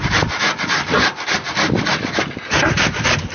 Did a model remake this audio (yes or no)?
yes